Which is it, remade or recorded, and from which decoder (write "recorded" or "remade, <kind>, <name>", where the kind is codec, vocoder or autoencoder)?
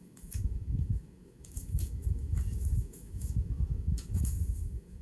remade, autoencoder, DAC-VAE